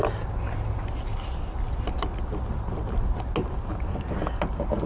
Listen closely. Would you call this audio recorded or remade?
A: recorded